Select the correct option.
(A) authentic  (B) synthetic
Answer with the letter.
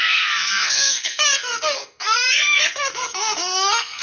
B